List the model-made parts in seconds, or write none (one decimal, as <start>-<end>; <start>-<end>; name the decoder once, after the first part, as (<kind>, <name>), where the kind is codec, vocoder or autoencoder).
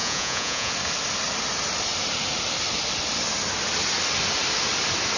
0.0-0.7 (vocoder, Vocos)